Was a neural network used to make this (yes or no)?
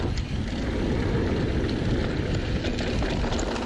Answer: no